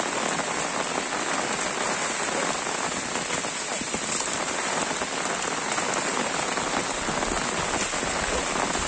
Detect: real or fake real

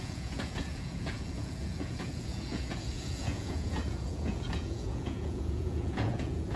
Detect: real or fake fake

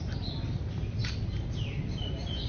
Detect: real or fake real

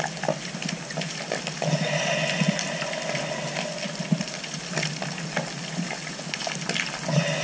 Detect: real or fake real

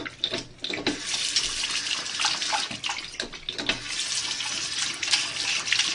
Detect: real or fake real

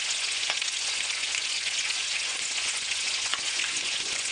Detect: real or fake fake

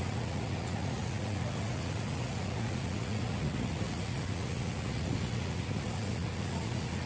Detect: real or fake fake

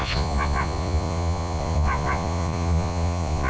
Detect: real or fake fake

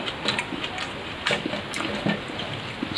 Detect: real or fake real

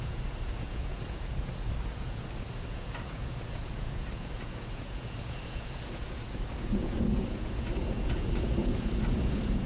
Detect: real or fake fake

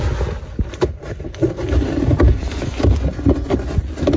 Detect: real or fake real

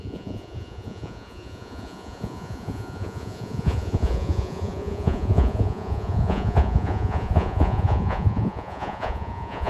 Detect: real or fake fake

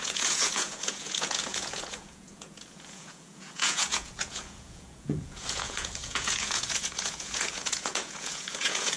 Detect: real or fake fake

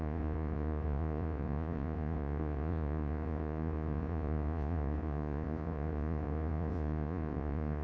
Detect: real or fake fake